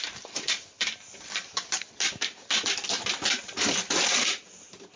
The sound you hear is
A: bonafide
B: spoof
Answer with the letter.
A